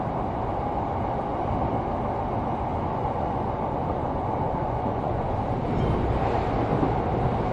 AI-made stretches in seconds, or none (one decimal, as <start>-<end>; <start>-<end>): 2.7-5.4